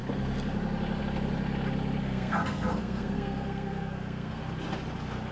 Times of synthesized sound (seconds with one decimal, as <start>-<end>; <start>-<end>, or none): 2.0-4.4